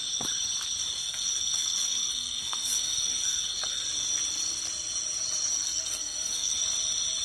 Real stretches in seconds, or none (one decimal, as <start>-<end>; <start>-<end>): 0.0-1.0; 3.8-5.5; 6.6-7.2